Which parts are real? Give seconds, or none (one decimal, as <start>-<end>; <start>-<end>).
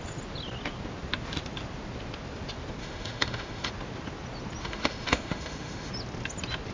0.0-2.8; 3.7-4.6; 5.9-6.7